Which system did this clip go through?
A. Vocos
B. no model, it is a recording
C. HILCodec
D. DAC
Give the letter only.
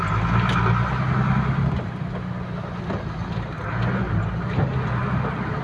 B